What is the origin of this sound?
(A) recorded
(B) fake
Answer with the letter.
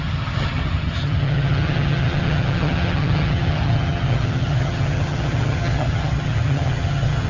B